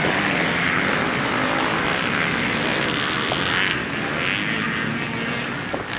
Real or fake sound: real